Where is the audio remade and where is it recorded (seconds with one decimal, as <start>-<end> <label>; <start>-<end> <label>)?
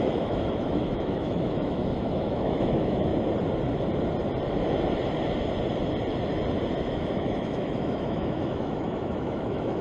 0.0-3.1 remade; 3.1-6.8 recorded; 6.8-9.8 remade